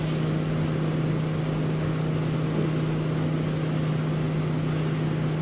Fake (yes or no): no